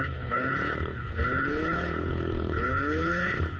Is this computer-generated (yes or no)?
yes